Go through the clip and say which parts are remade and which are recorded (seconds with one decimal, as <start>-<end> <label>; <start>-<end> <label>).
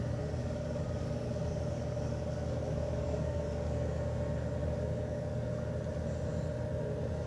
0.0-0.4 recorded; 0.4-4.1 remade; 4.1-4.6 recorded; 4.6-5.7 remade; 5.7-7.3 recorded